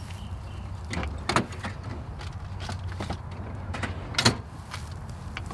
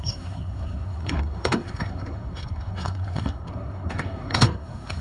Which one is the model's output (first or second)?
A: second